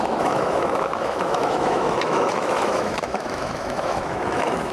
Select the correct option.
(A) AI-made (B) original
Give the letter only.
A